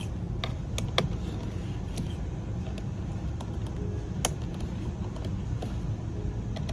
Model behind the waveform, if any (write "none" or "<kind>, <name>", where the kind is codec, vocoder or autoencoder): none